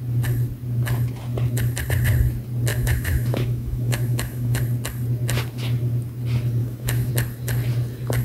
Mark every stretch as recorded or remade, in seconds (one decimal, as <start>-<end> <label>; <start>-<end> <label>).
0.0-2.7 recorded; 2.7-4.6 remade; 4.6-6.6 recorded; 6.6-7.1 remade; 7.1-8.2 recorded